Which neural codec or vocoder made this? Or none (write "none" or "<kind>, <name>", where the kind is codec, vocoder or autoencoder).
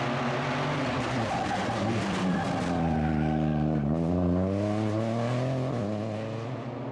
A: none